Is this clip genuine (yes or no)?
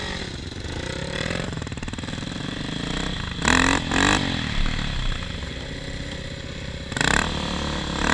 yes